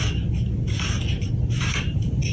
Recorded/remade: recorded